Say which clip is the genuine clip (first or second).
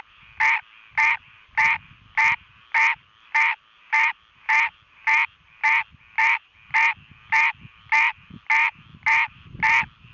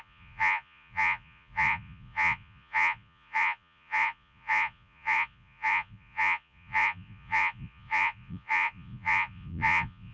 first